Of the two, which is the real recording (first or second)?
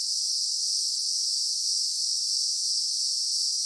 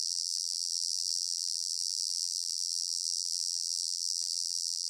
first